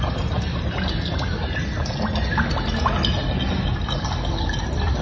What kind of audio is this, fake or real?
real